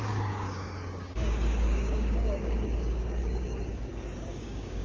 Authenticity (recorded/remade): remade